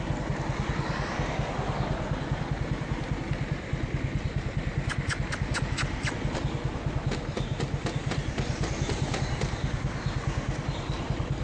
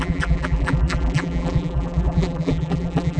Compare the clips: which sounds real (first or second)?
first